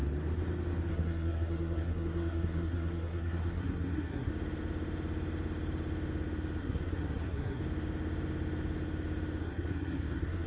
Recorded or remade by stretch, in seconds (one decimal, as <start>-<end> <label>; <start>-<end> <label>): 0.0-0.9 recorded; 0.9-4.3 remade; 4.3-6.6 recorded; 6.6-7.6 remade; 7.6-9.4 recorded; 9.4-10.5 remade